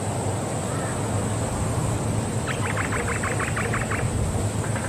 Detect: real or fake real